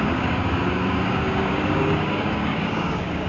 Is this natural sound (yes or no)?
no